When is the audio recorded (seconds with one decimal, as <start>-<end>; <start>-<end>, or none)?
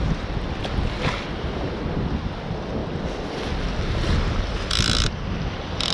0.0-5.9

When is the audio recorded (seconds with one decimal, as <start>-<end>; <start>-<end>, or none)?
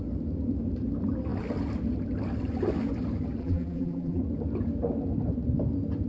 0.0-3.4; 4.2-6.1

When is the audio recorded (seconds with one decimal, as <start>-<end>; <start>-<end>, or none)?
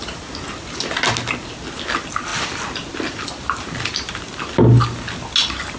0.0-5.8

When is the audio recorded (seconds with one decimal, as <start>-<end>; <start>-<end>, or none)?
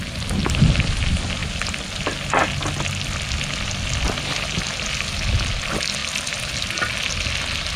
0.0-7.8